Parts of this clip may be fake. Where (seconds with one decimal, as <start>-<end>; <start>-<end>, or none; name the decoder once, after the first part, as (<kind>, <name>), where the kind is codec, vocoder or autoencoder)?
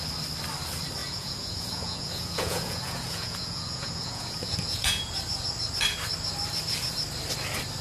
1.0-5.1 (vocoder, Vocos)